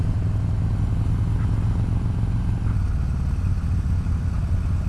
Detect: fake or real real